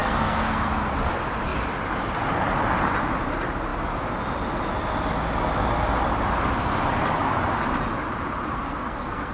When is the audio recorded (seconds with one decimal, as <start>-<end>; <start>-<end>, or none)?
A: 0.7-8.5